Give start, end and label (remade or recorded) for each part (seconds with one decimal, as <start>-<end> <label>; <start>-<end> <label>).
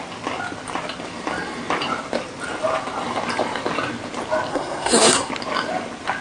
0.0-4.5 recorded; 4.5-5.3 remade; 5.3-6.2 recorded